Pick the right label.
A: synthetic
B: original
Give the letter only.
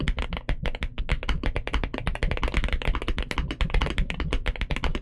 B